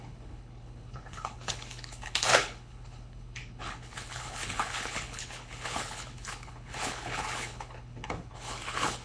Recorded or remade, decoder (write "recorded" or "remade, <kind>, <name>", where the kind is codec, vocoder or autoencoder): remade, codec, HILCodec